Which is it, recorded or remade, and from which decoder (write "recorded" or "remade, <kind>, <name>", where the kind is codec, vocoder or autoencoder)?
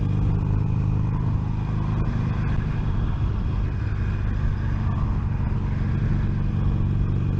recorded